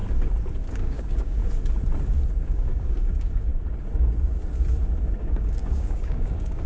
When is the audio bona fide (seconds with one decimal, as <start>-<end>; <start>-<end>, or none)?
0.0-0.7; 1.4-2.4; 3.5-5.2